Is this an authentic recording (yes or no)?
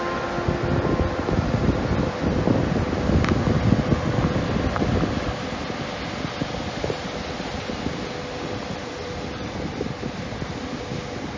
yes